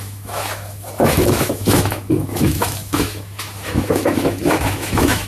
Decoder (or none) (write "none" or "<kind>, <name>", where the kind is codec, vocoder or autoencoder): autoencoder, DAC-VAE